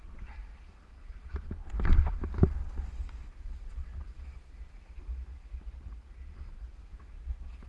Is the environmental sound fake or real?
real